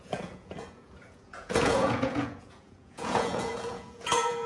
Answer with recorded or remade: remade